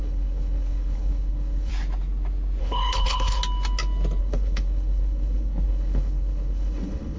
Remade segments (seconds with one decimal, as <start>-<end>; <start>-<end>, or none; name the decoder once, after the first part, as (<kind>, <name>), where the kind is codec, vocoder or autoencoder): 0.0-1.7 (codec, HILCodec); 2.6-3.4; 4.2-7.2